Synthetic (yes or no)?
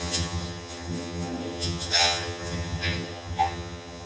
yes